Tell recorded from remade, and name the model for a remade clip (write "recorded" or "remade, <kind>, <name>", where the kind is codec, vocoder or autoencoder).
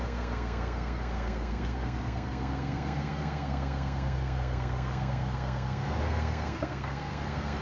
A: remade, codec, SNAC